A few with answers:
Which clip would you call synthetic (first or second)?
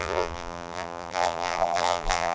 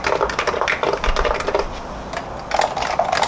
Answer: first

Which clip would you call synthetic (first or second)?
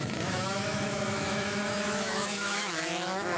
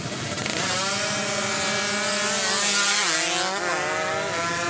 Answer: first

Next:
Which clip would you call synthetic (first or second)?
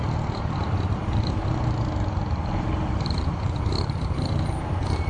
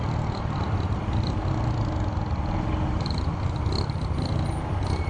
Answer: first